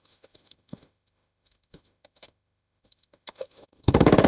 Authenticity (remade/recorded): remade